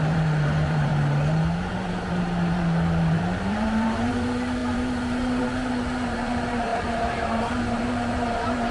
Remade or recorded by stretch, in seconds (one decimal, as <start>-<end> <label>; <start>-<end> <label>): 0.0-0.9 remade; 0.9-1.6 recorded; 1.6-8.7 remade